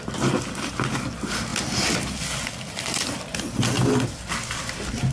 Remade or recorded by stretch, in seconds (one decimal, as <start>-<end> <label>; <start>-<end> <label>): 0.0-5.1 recorded